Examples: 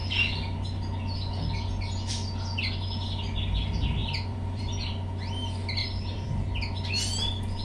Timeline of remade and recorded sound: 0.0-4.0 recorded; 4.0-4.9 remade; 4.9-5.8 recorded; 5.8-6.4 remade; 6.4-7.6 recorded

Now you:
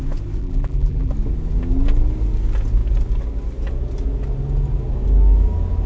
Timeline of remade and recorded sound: 0.0-0.4 recorded; 0.4-1.1 remade; 1.1-5.9 recorded

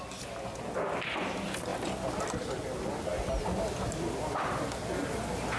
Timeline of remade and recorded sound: 0.0-1.7 recorded; 1.7-2.2 remade; 2.2-3.1 recorded; 3.1-4.5 remade; 4.5-5.6 recorded

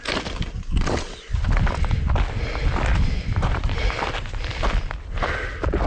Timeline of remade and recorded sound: 0.0-2.9 recorded; 2.9-3.8 remade; 3.8-5.9 recorded

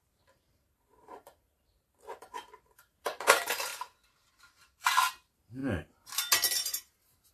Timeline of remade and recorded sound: 0.0-5.6 remade; 5.6-7.3 recorded

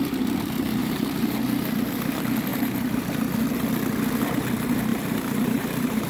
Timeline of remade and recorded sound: 0.0-0.8 recorded; 0.8-1.4 remade; 1.4-2.5 recorded; 2.5-3.0 remade; 3.0-4.9 recorded; 4.9-6.1 remade

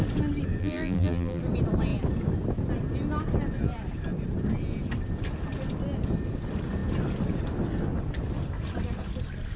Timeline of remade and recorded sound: 0.0-0.6 recorded; 0.6-1.4 remade; 1.4-9.6 recorded